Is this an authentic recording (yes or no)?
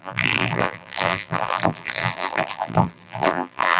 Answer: no